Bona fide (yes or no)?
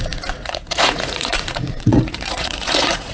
no